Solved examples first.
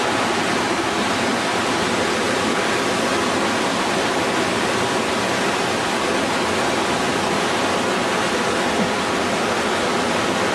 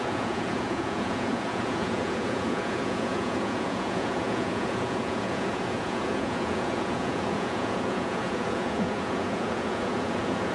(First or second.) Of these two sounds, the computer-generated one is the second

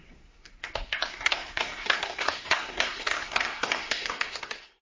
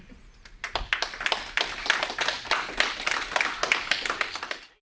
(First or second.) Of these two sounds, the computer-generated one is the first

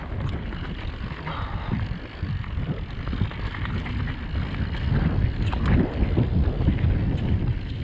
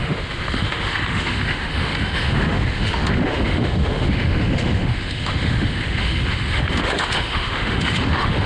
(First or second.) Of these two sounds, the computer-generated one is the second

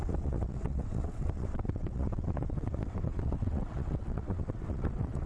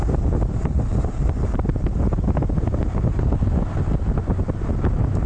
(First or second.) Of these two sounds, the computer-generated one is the first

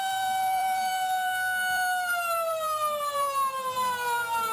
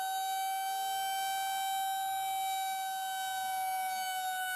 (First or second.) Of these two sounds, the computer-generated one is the first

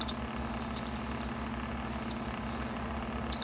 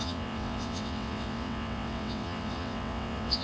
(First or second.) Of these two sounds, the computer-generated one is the second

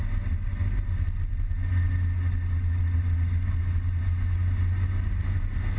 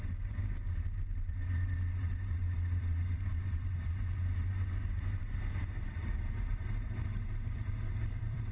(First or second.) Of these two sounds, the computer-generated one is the second